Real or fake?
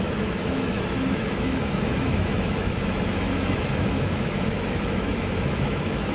fake